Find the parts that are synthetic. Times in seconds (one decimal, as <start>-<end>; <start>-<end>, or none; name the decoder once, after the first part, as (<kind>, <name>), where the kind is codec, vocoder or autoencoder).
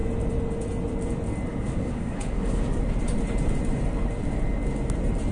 1.5-2.8 (codec, DAC)